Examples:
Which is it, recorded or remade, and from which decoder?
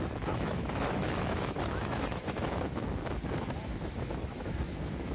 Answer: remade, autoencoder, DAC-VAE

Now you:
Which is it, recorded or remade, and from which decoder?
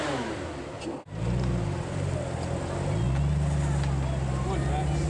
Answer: recorded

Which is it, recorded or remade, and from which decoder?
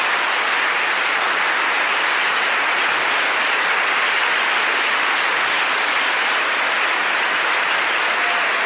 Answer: recorded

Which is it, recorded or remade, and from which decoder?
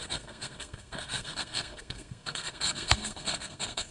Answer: remade, codec, SNAC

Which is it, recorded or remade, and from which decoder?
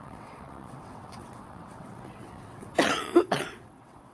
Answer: remade, vocoder, WaveNeXt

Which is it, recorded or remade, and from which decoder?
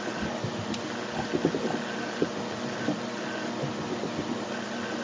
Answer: recorded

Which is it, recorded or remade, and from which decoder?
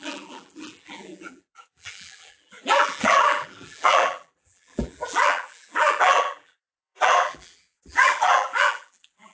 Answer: remade, vocoder, BigVGAN v2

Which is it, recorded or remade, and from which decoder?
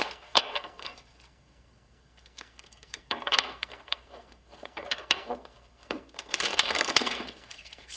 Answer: remade, codec, SNAC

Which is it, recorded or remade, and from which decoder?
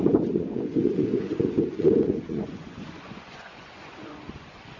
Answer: remade, vocoder, Vocos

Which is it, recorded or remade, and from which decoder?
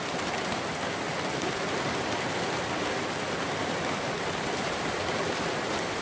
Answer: recorded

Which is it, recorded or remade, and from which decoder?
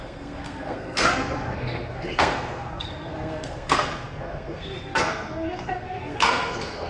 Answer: remade, codec, SNAC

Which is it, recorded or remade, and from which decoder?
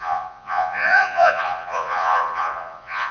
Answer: remade, vocoder, Vocos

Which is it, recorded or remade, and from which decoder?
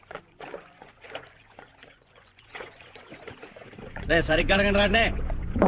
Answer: remade, vocoder, Vocos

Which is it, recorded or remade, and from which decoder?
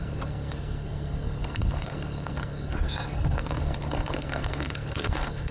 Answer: remade, codec, SNAC